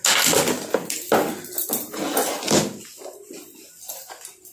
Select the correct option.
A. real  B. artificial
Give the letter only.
A